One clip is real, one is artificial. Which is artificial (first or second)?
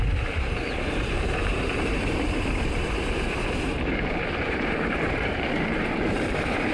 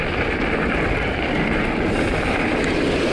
first